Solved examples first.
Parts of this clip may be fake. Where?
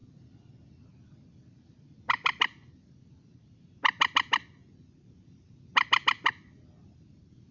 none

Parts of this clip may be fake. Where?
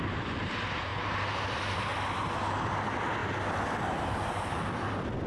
0.0-0.9 (vocoder, BigVGAN v2); 1.4-1.9; 2.6-5.3